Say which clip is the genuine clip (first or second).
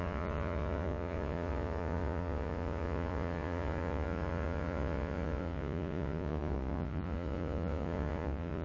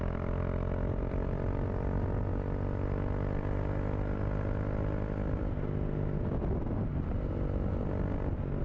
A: second